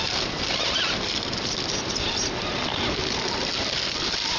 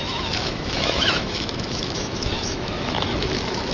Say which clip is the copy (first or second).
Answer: second